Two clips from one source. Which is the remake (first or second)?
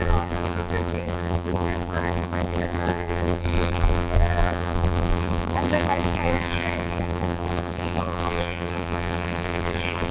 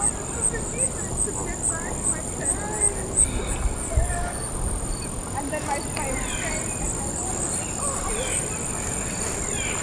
first